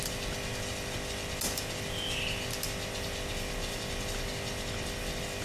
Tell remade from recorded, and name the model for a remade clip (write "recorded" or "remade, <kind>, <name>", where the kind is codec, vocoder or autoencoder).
recorded